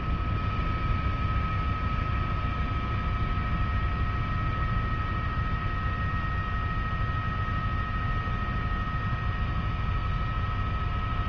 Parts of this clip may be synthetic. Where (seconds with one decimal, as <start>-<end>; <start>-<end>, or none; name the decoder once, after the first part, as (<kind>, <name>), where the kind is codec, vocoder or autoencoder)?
none